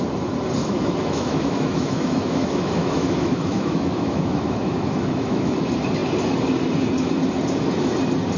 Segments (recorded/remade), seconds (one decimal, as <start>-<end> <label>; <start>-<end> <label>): 0.0-0.6 recorded; 0.6-5.6 remade; 5.6-8.4 recorded